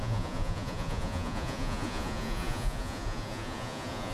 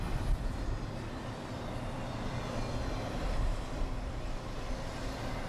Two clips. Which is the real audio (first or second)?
second